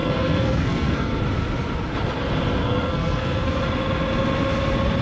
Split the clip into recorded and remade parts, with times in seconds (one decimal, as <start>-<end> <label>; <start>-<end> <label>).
0.0-1.2 remade; 1.2-2.6 recorded; 2.6-3.6 remade; 3.6-5.0 recorded